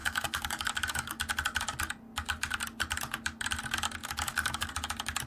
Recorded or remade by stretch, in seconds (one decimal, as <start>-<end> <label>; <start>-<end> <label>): 0.0-1.2 remade; 1.2-4.0 recorded; 4.0-4.7 remade; 4.7-5.3 recorded